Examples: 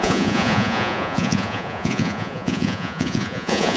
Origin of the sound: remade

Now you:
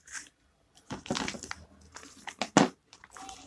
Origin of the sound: recorded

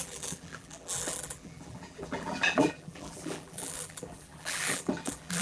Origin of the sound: remade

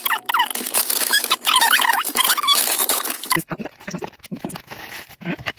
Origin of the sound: remade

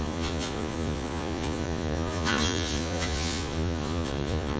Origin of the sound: remade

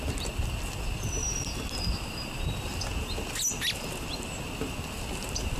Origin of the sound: recorded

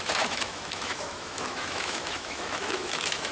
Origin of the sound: remade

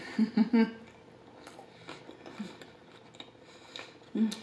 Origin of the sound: recorded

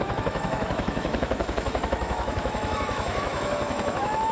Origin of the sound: remade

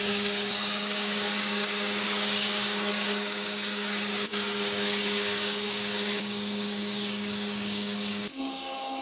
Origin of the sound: remade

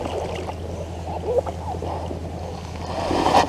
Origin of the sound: recorded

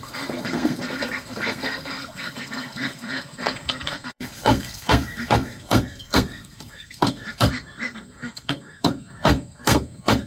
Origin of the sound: remade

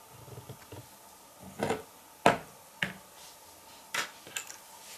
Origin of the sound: recorded